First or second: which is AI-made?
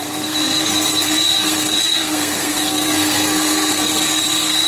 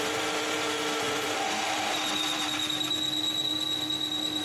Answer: first